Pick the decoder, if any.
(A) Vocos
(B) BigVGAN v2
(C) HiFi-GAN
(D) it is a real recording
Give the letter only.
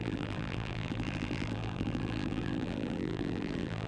B